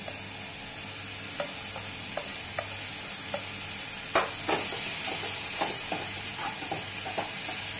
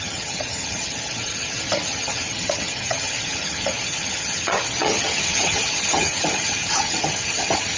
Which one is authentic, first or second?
first